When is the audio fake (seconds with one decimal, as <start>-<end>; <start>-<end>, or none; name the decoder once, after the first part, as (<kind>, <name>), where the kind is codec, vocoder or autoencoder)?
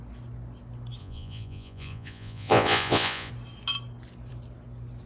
1.0-3.3 (vocoder, Vocos)